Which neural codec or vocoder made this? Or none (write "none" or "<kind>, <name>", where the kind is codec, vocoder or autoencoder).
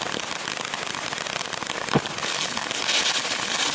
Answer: none